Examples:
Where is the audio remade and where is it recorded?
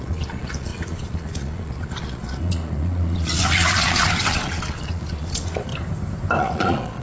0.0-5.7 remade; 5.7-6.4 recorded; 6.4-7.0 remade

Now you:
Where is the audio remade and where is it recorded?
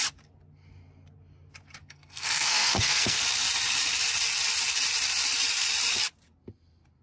0.0-1.8 recorded; 1.8-3.2 remade; 3.2-7.0 recorded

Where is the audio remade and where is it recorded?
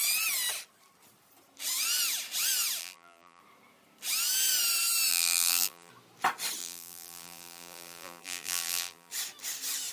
0.0-2.8 recorded; 2.8-3.4 remade; 3.4-5.1 recorded; 5.1-5.9 remade; 5.9-6.6 recorded; 6.6-9.1 remade; 9.1-9.9 recorded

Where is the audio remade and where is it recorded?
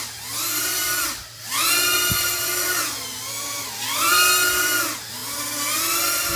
0.0-6.4 recorded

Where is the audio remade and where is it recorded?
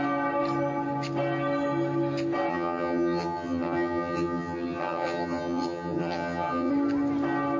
0.0-2.5 recorded; 2.5-6.7 remade; 6.7-7.6 recorded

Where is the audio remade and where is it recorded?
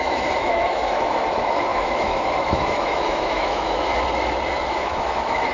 0.0-3.9 remade; 3.9-4.7 recorded; 4.7-5.5 remade